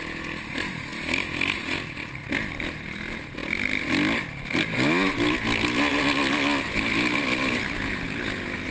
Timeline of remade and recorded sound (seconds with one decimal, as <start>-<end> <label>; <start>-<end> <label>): 0.0-8.7 recorded